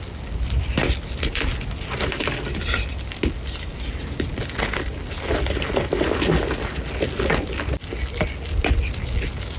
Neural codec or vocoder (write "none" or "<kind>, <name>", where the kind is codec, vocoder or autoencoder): none